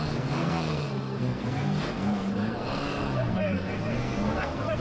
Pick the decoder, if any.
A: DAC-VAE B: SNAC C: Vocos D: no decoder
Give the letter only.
B